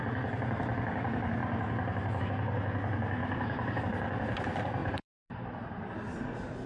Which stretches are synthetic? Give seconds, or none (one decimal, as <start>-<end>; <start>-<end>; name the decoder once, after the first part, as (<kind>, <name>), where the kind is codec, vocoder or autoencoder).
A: 3.2-3.8 (vocoder, BigVGAN v2); 4.8-5.9